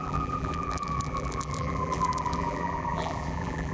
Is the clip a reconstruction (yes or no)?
yes